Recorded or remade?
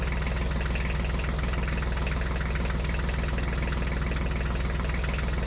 recorded